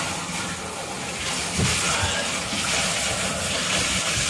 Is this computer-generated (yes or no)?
no